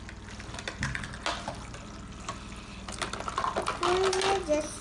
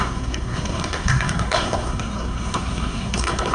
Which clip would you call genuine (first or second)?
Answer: first